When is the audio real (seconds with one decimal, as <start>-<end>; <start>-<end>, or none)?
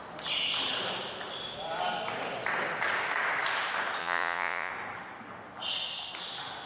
0.0-4.0; 4.7-6.7